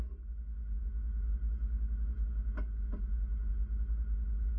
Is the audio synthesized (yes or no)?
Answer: no